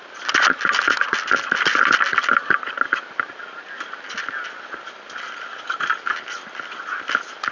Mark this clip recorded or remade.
recorded